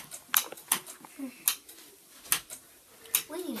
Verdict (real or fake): real